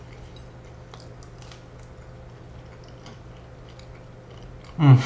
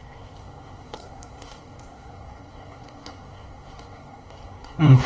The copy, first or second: second